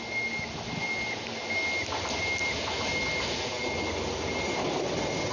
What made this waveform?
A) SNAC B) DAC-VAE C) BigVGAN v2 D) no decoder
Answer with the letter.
D